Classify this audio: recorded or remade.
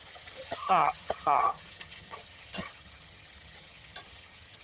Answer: remade